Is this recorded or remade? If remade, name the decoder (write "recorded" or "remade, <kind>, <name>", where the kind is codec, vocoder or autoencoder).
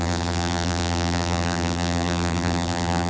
remade, vocoder, BigVGAN v2